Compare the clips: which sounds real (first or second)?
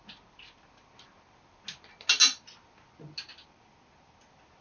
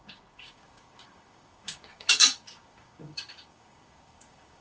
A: first